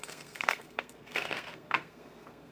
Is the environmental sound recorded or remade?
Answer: remade